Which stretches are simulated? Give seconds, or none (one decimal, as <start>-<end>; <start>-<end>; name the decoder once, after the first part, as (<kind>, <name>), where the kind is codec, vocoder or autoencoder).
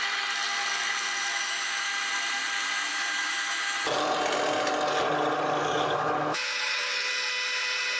1.3-1.9 (autoencoder, DAC-VAE); 2.9-3.7; 5.6-7.1